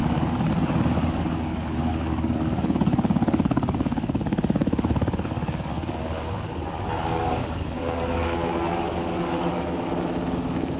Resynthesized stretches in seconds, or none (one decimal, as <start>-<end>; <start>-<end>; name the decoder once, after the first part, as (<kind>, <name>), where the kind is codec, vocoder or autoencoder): 0.0-9.5 (codec, DAC); 10.3-10.8